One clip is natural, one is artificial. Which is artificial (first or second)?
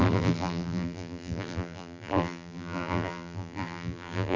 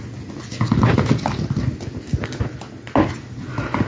first